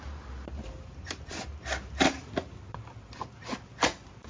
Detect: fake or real real